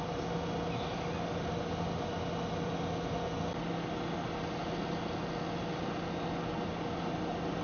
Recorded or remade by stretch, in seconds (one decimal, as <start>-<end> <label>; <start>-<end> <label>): 0.0-7.6 recorded